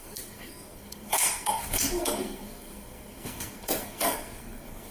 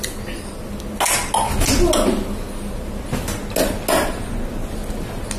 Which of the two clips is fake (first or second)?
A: first